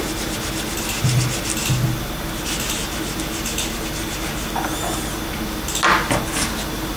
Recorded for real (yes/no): yes